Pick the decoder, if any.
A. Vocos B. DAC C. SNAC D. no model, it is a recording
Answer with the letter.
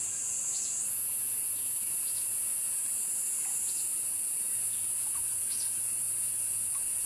A